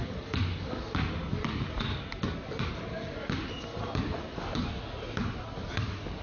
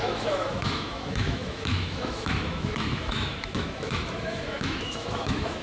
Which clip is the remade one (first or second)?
second